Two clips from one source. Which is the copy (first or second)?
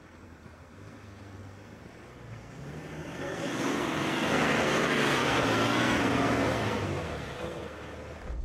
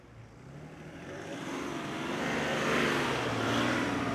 first